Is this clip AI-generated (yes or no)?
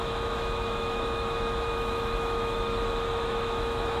yes